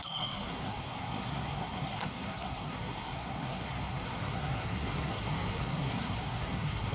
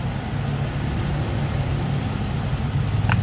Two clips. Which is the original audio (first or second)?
second